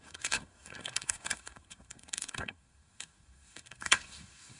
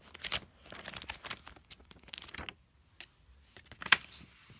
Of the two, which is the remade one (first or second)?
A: first